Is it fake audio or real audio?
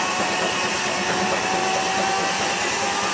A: real